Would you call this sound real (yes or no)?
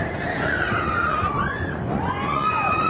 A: no